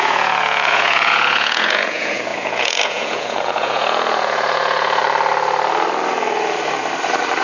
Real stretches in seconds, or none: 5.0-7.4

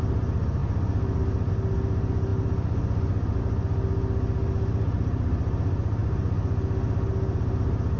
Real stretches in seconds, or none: 0.0-8.0

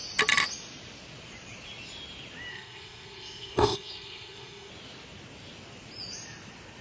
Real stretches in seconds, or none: 0.0-2.5; 4.7-6.8